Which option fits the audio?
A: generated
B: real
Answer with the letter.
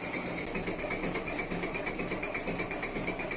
B